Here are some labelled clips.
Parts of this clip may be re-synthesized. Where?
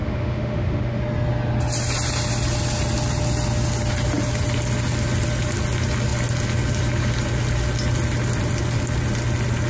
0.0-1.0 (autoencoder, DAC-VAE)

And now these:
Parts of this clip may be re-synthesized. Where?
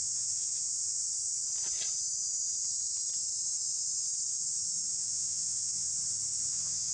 0.0-1.0 (vocoder, Vocos); 4.9-5.9; 6.5-6.9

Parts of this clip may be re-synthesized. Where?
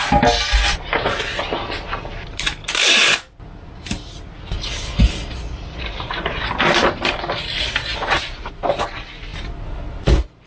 none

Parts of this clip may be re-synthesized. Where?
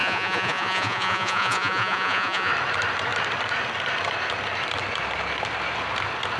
0.0-2.5 (vocoder, Vocos)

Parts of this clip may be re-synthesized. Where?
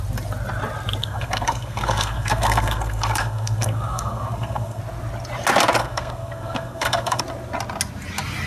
1.0-4.8 (codec, SNAC); 5.8-7.2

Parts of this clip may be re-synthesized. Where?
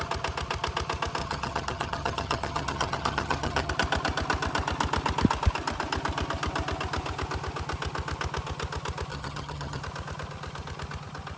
1.2-3.7 (vocoder, HiFi-GAN); 9.1-9.8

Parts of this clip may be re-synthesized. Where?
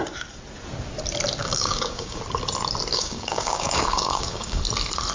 1.4-2.2 (codec, DAC); 2.9-4.6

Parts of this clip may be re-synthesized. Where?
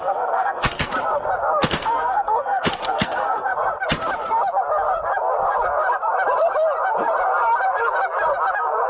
0.0-0.9 (codec, SNAC); 1.5-3.5